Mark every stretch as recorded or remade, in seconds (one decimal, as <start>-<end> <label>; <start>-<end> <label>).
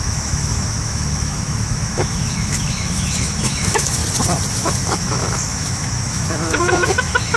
0.0-4.0 remade; 4.0-4.6 recorded; 4.6-7.4 remade